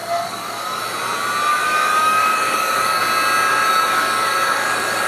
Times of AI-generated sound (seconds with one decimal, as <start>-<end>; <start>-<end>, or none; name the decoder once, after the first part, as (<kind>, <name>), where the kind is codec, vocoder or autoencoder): 0.0-0.8 (codec, DAC); 1.5-3.0; 3.5-5.1